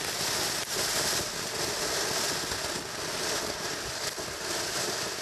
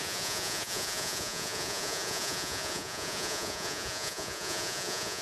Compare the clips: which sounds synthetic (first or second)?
second